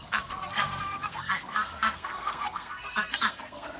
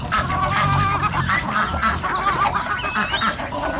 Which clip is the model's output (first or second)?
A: first